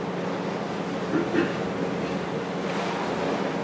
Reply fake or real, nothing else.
real